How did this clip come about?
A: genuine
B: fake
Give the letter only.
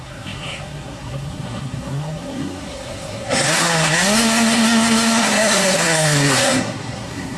B